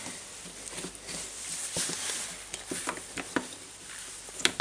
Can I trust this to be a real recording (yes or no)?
yes